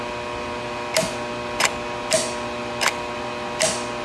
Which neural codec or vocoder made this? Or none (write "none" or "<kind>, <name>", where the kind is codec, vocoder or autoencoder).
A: none